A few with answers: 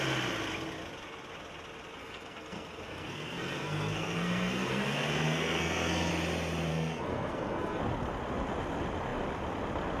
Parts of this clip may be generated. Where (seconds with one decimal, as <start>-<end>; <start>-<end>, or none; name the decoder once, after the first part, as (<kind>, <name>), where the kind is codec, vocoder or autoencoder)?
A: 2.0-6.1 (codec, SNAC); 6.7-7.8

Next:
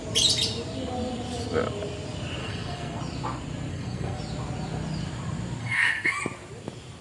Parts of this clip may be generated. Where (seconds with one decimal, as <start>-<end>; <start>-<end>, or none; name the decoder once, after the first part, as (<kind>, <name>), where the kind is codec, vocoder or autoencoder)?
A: 2.4-3.0 (codec, SNAC); 3.7-4.2; 5.6-6.2

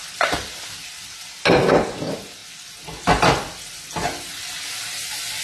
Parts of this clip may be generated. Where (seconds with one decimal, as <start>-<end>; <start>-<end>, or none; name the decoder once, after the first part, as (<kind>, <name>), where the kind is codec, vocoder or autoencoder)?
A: none

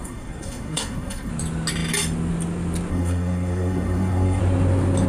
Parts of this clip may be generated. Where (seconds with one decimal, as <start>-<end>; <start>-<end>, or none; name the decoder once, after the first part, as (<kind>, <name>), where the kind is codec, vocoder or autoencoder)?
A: 0.0-1.3 (codec, SNAC); 2.9-4.4

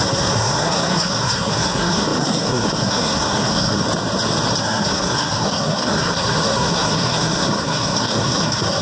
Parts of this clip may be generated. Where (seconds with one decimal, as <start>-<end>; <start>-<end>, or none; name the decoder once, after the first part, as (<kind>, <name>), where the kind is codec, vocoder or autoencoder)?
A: 0.0-3.8 (codec, SNAC); 4.6-8.8

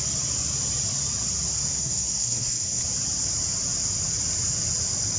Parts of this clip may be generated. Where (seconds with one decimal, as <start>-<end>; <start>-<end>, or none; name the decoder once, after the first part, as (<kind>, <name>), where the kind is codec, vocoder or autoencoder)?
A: 1.8-2.8 (codec, SNAC)